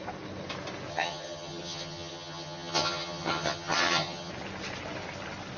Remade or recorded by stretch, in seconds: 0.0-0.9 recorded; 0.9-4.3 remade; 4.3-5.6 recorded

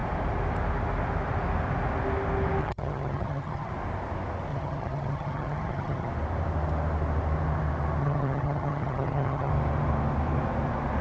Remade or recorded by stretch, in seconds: 0.0-2.6 recorded; 2.6-3.7 remade; 3.7-4.5 recorded; 4.5-6.1 remade; 6.1-8.0 recorded; 8.0-9.5 remade; 9.5-11.0 recorded

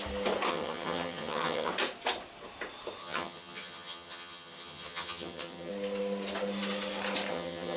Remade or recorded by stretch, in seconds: 0.0-0.5 recorded; 0.5-1.7 remade; 1.7-3.0 recorded; 3.0-5.7 remade; 5.7-7.3 recorded; 7.3-7.8 remade

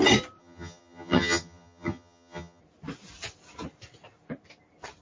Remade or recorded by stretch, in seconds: 0.0-0.4 recorded; 0.4-2.6 remade; 2.6-5.0 recorded

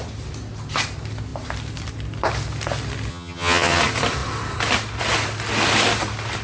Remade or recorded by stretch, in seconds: 0.0-3.1 recorded; 3.1-3.8 remade; 3.8-6.4 recorded

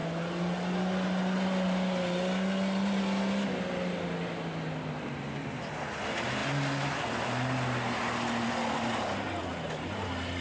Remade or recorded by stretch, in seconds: 0.0-10.4 recorded